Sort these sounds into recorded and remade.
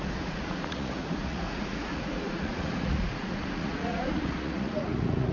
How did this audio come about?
remade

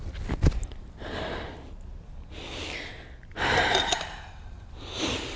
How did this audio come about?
recorded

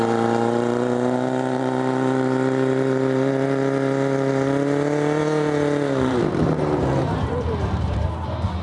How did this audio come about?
remade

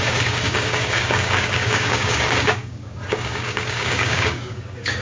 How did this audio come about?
remade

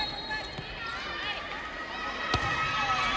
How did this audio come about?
recorded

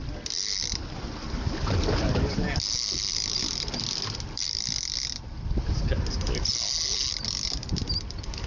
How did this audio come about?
recorded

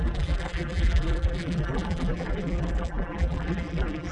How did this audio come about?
remade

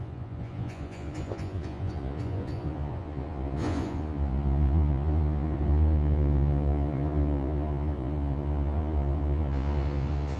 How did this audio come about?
remade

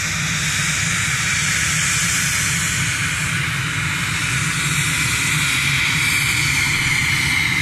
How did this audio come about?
recorded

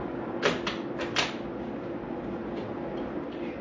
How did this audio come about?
recorded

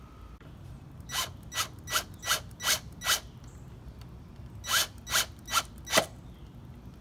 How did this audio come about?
recorded